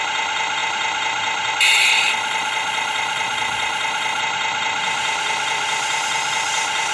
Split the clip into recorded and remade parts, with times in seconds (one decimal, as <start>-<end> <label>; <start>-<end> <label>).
0.0-1.9 recorded; 1.9-4.2 remade; 4.2-6.9 recorded